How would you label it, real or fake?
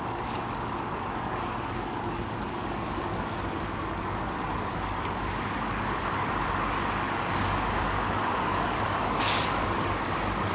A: fake